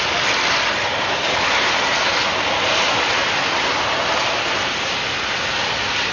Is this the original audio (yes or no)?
yes